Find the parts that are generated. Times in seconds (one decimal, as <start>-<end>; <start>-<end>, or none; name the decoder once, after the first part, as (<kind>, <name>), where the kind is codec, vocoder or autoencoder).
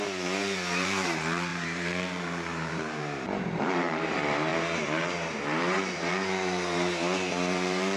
0.0-8.0 (vocoder, BigVGAN v2)